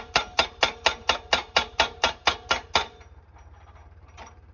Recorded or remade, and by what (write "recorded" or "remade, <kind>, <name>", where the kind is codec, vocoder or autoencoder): remade, vocoder, BigVGAN v2